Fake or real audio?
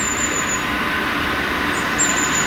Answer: real